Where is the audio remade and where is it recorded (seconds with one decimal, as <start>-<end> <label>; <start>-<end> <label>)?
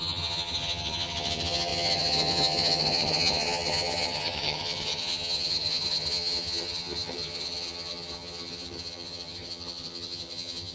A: 0.0-10.7 remade